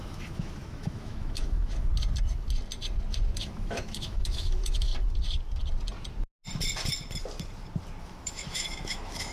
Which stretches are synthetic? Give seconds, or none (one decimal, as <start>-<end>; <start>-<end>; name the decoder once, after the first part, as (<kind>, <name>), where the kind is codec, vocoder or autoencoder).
0.0-1.9 (autoencoder, DAC-VAE); 3.4-4.9; 8.0-9.3